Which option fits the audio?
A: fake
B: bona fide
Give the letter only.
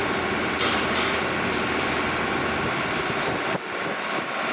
B